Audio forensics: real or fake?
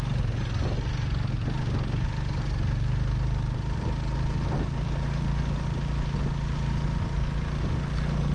real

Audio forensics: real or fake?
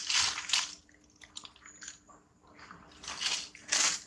real